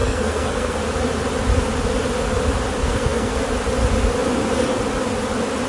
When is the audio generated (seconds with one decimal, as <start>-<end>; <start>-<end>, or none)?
0.0-0.8; 2.8-3.4